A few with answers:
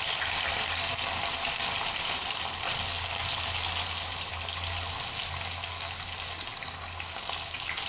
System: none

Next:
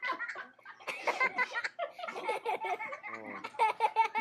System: none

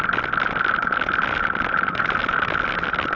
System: none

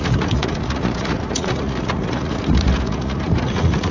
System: vocoder, Vocos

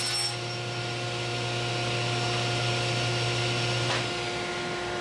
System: none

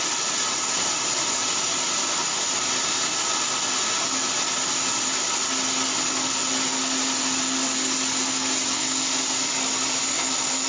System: none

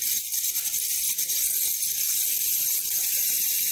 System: none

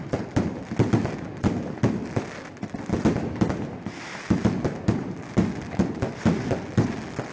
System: none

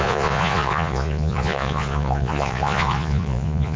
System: vocoder, Vocos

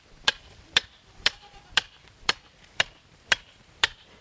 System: vocoder, BigVGAN v2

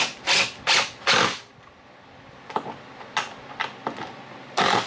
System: none